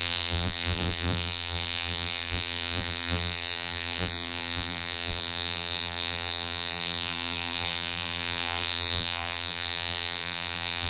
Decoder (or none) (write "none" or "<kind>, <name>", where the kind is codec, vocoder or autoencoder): vocoder, BigVGAN v2